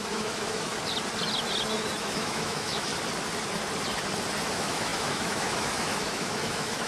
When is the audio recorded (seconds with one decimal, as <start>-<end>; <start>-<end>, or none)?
0.7-2.0; 2.9-4.4